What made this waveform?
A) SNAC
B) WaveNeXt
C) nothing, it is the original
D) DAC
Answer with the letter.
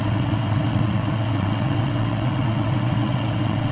B